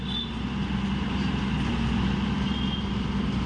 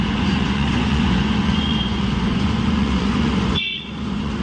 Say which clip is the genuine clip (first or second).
first